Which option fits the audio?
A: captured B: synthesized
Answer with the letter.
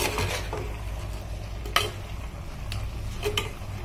A